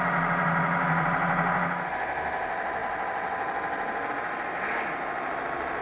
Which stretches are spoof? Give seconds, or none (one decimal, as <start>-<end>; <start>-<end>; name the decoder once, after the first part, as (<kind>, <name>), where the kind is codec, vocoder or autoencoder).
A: none